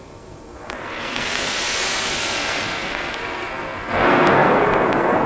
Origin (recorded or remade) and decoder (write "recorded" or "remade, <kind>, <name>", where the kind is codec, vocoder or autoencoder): remade, codec, SNAC